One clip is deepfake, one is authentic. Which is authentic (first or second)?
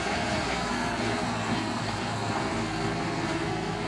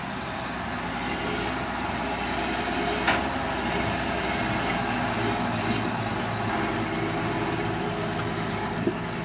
second